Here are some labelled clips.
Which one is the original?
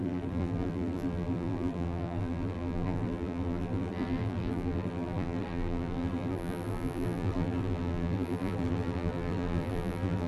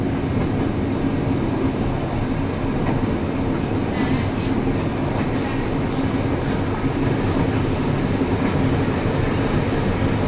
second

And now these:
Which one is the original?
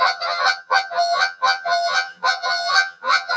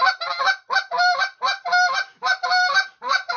second